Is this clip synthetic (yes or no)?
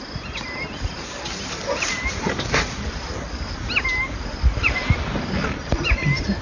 no